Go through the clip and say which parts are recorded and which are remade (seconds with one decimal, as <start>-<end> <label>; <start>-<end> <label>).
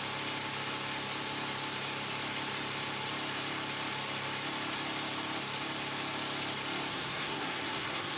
0.0-6.9 recorded; 6.9-8.2 remade